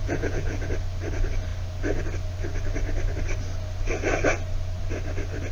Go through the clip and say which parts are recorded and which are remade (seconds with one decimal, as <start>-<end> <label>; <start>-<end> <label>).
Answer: 0.0-0.7 remade; 0.7-5.5 recorded